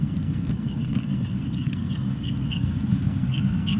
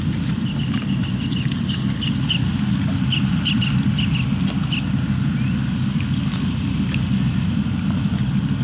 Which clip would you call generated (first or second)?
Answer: first